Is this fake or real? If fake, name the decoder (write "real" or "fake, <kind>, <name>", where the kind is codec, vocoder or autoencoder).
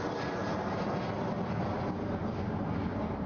real